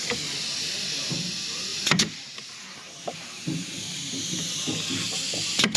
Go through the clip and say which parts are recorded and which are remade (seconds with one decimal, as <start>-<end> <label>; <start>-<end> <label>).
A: 0.0-1.7 recorded; 1.7-4.6 remade; 4.6-5.8 recorded